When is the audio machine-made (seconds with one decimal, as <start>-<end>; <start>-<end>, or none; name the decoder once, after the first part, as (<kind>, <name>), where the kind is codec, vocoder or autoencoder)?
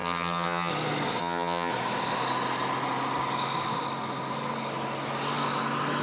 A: 0.0-0.7 (vocoder, HiFi-GAN); 1.2-1.7